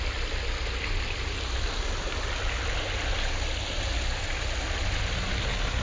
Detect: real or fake real